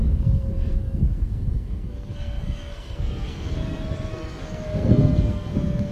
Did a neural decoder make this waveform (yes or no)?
yes